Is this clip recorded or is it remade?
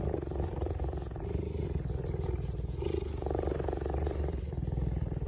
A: recorded